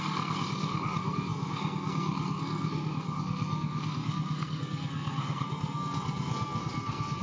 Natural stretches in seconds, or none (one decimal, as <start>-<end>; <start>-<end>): none

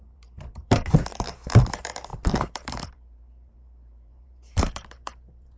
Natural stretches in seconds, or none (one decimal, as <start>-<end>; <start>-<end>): none

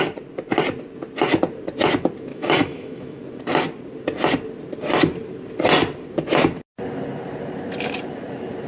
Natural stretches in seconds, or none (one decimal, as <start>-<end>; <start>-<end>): 0.0-2.3; 3.2-8.7

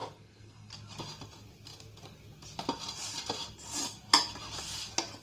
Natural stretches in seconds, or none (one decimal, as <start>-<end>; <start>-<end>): 0.7-5.2

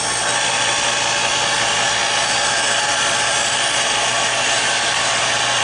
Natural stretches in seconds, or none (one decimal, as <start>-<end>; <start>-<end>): 0.0-5.6

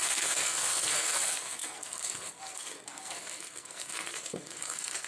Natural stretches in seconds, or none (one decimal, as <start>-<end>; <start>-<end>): none

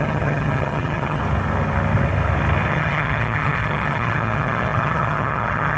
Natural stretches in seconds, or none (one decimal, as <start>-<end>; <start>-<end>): 1.2-2.7

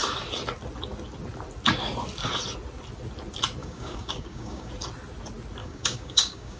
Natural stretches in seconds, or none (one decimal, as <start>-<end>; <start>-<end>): 0.0-3.6; 4.7-5.6